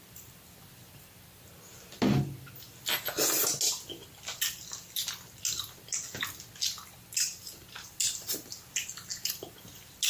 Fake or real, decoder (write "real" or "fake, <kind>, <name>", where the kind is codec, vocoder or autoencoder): real